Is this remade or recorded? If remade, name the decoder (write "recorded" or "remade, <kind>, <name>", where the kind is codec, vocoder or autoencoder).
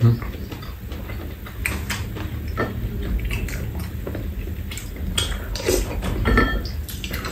recorded